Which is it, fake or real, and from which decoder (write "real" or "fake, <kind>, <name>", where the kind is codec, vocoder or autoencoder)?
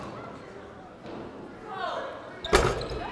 real